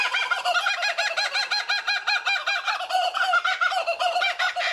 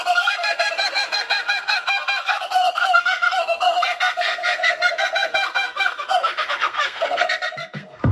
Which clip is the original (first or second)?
first